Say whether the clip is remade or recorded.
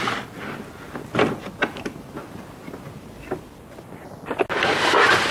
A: recorded